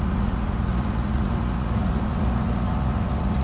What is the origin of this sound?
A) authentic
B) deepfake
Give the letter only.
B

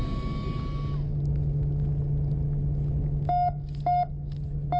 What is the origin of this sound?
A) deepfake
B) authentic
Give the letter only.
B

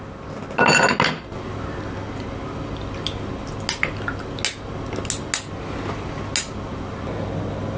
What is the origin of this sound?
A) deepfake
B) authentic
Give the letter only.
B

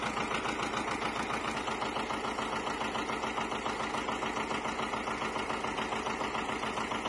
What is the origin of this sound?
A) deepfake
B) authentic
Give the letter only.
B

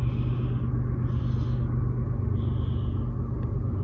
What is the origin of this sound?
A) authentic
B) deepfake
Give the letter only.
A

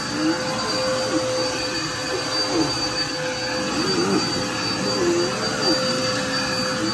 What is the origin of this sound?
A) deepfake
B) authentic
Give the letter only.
B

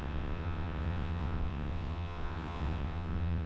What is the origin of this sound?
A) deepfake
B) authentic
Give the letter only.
A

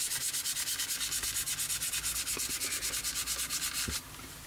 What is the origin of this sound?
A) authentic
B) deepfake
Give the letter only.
A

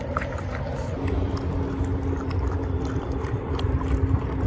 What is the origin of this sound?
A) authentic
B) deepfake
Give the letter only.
A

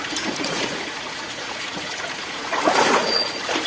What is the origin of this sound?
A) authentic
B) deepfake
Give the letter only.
B